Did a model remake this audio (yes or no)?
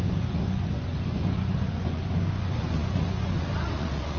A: yes